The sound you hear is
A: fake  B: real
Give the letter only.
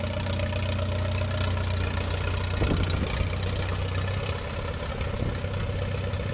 B